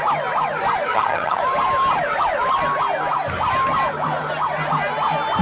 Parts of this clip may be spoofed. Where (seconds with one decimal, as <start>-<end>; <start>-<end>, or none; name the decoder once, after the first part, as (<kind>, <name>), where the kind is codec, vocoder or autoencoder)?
0.9-1.4 (vocoder, HiFi-GAN)